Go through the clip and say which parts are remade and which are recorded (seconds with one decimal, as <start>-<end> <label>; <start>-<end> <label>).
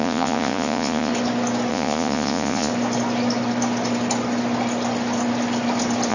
0.0-1.1 remade; 1.1-1.7 recorded; 1.7-2.7 remade; 2.7-6.1 recorded